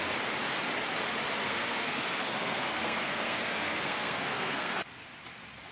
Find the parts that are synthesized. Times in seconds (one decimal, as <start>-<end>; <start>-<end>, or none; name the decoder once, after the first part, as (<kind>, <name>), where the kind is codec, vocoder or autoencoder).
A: 1.4-4.8 (codec, SNAC)